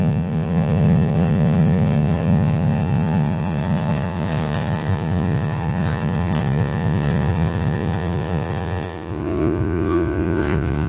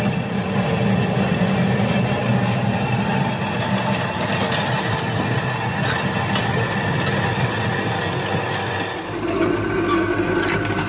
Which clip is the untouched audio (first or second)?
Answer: second